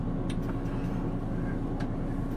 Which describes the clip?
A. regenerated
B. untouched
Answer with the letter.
B